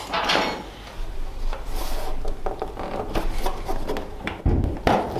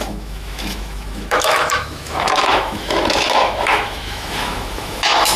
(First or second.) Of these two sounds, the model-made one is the second